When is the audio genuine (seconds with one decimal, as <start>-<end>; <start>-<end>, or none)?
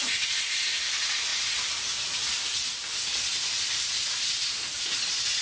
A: 0.0-1.3; 4.5-5.4